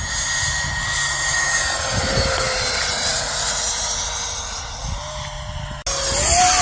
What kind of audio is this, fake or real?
real